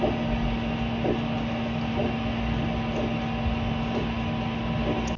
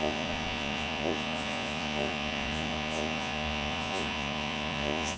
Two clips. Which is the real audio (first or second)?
first